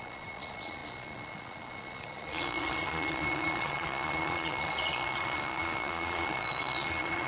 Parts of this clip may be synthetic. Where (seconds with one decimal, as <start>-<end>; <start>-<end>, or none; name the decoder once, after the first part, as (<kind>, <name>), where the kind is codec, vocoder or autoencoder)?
0.0-7.3 (vocoder, Vocos)